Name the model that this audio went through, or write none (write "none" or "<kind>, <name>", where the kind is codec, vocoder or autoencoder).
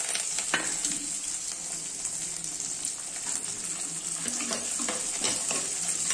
none